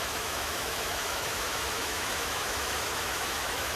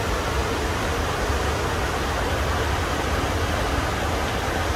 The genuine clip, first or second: second